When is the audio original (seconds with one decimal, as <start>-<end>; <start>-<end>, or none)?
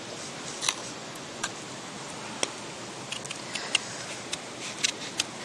0.0-0.8; 1.5-5.4